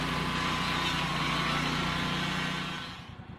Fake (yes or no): no